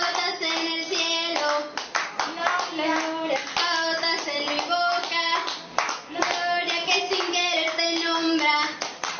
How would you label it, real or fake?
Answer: real